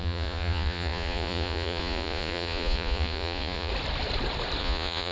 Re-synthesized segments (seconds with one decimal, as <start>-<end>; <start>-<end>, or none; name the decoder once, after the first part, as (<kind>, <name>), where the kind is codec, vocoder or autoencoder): 0.0-3.7 (vocoder, Vocos); 4.6-5.1